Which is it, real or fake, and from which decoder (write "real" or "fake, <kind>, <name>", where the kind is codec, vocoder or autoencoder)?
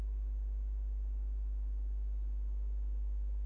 real